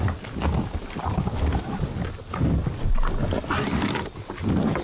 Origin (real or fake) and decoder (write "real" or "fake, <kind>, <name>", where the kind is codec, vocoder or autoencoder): real